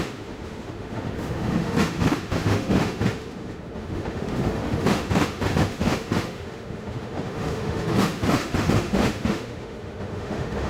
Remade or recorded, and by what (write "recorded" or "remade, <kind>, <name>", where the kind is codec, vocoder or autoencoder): remade, autoencoder, DAC-VAE